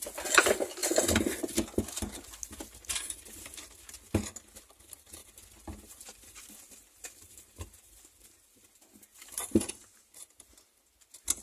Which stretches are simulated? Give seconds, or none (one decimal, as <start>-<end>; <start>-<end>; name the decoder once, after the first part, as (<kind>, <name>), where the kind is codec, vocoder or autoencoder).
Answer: 5.2-10.2 (vocoder, BigVGAN v2)